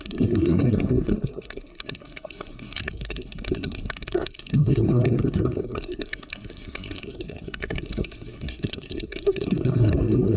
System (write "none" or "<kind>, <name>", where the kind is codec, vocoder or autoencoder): codec, SNAC